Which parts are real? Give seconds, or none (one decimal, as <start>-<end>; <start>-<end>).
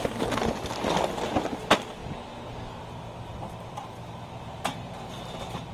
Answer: 0.0-2.0